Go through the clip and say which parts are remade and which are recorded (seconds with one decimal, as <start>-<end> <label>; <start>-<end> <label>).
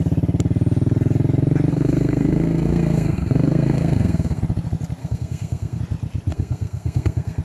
0.0-1.7 recorded; 1.7-4.4 remade; 4.4-5.0 recorded; 5.0-5.8 remade; 5.8-6.3 recorded; 6.3-7.4 remade